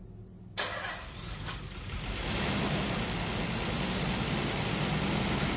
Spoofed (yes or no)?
no